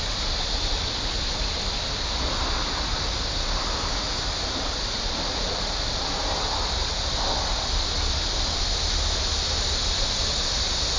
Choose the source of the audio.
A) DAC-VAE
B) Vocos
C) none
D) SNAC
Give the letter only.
C